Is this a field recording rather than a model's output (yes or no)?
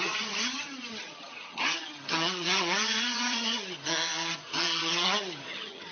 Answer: no